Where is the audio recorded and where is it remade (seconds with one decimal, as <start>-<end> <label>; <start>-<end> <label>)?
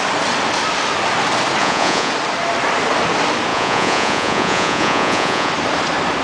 0.0-1.6 recorded; 1.6-2.1 remade; 2.1-3.5 recorded; 3.5-5.5 remade; 5.5-6.2 recorded